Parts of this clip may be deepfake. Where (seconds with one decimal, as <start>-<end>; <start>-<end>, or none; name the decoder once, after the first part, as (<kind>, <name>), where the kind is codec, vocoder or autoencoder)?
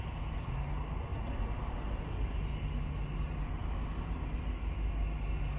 none